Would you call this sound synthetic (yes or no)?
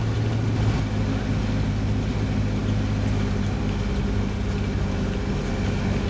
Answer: no